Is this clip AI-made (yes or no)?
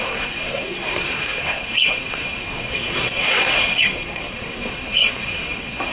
yes